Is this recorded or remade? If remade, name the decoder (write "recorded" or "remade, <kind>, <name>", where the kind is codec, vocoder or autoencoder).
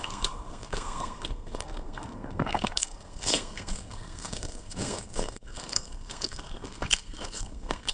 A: remade, codec, SNAC